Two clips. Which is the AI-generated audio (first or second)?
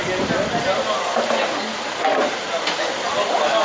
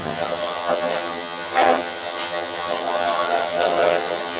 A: second